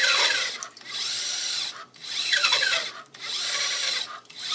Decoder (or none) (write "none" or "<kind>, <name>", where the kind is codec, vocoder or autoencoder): none